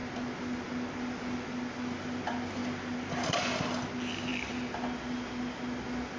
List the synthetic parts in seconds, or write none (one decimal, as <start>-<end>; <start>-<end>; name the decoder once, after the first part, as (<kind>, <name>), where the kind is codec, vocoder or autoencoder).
none